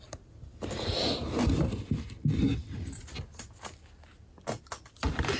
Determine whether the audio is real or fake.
real